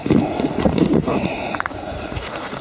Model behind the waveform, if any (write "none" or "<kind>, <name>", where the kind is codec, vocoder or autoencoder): vocoder, Vocos